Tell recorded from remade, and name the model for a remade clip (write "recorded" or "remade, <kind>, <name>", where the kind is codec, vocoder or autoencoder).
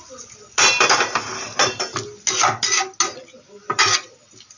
recorded